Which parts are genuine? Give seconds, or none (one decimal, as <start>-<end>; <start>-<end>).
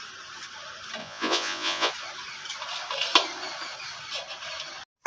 0.0-1.0; 1.9-5.1